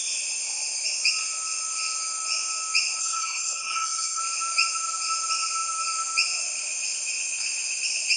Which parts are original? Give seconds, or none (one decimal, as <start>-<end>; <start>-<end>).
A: 0.0-3.0; 4.2-8.2